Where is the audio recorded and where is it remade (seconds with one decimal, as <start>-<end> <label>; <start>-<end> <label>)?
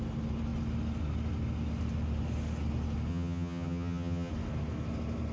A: 0.0-3.1 recorded; 3.1-4.3 remade; 4.3-5.3 recorded